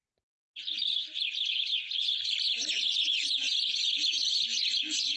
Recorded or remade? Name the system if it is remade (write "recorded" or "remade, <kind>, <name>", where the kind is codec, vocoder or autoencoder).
recorded